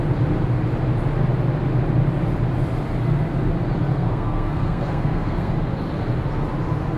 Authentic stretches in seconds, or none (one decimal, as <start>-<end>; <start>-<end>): 0.0-3.9; 5.5-7.0